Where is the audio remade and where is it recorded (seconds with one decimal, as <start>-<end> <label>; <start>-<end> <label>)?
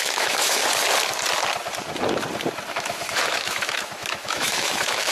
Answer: 0.0-0.6 remade; 0.6-2.7 recorded; 2.7-5.1 remade